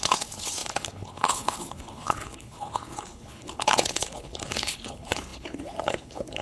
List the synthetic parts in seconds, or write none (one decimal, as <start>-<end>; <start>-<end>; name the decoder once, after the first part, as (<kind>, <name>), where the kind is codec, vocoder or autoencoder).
0.0-6.4 (codec, HILCodec)